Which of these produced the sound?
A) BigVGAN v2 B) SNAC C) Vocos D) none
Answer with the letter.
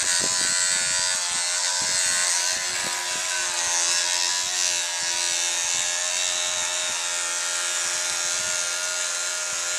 D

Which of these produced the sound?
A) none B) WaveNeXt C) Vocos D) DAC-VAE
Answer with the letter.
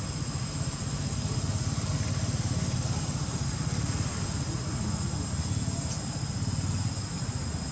A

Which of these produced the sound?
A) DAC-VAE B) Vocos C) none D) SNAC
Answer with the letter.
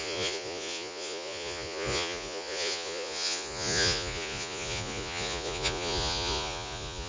B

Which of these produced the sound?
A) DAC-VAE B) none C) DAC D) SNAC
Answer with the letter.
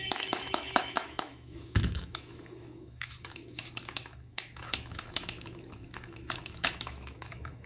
A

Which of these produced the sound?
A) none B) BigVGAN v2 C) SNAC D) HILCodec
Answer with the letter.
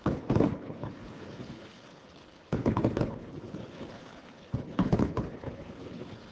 D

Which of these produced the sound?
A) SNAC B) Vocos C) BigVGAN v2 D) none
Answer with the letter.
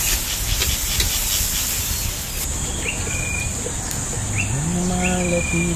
D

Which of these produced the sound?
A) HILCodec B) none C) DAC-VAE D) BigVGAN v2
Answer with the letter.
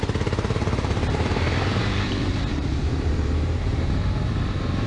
D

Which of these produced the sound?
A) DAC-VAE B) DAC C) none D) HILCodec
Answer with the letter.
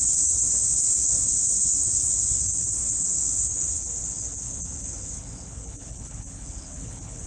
D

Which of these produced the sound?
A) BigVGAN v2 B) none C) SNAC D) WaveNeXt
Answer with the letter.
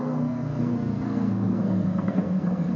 C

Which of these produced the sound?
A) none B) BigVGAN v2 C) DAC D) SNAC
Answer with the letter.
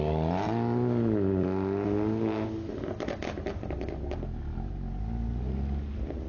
A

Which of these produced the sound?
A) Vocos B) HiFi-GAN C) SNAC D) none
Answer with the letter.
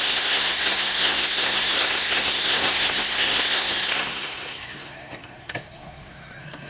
C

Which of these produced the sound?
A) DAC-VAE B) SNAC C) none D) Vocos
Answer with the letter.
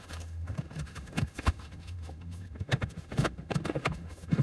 A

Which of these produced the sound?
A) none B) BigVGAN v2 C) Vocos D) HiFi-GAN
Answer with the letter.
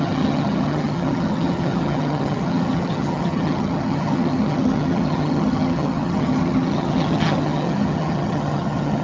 D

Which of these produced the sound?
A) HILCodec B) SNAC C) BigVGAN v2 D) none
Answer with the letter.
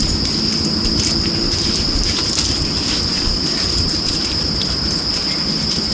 D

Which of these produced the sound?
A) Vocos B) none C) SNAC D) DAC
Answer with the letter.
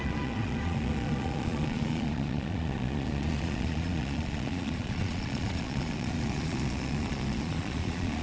A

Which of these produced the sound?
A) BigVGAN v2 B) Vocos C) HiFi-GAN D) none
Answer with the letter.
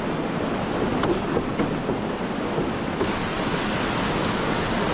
D